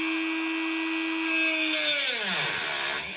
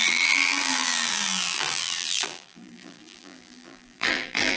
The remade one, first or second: second